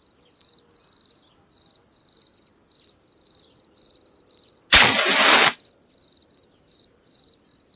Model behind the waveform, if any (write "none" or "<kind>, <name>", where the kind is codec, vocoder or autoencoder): none